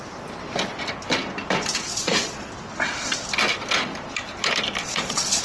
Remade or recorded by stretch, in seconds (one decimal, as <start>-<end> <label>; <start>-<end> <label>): 0.0-1.9 recorded; 1.9-2.5 remade; 2.5-4.8 recorded; 4.8-5.4 remade